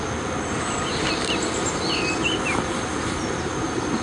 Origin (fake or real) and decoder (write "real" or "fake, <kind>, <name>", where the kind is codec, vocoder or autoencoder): real